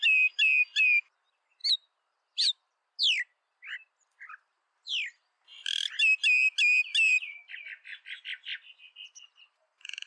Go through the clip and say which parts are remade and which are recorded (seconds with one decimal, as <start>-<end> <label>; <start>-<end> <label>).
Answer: 0.0-1.6 recorded; 1.6-2.9 remade; 2.9-6.9 recorded; 6.9-7.5 remade; 7.5-10.1 recorded